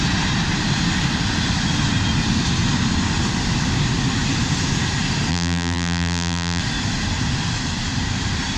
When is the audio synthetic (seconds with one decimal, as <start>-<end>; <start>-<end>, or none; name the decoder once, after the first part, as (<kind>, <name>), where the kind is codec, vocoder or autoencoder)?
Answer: 5.3-6.6 (vocoder, BigVGAN v2)